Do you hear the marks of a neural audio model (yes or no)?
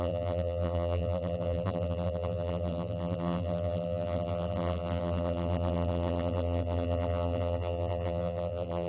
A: yes